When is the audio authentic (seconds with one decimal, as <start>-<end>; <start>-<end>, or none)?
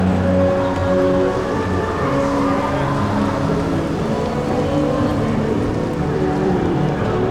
0.0-0.8; 2.2-5.1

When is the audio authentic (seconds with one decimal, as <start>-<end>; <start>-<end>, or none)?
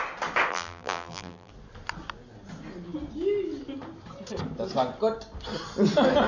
0.0-0.5; 1.5-6.3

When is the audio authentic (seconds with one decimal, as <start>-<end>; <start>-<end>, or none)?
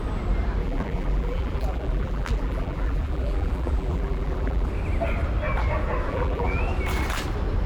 0.0-0.6; 4.7-6.1; 6.6-7.7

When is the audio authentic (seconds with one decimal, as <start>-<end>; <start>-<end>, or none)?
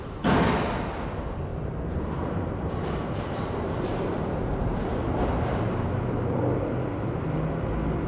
0.0-1.5; 6.4-8.1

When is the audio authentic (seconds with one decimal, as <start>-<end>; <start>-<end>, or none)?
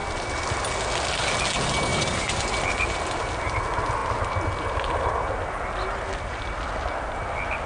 0.7-1.9; 2.6-7.7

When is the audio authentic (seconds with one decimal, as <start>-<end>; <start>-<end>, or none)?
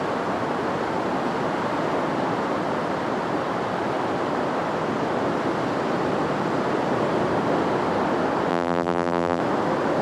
0.0-8.5; 9.4-10.0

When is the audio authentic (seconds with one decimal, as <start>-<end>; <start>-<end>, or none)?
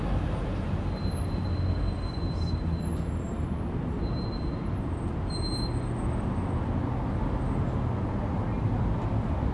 0.0-2.9; 5.3-9.5